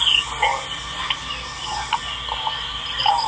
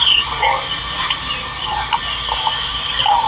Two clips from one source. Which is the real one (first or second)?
first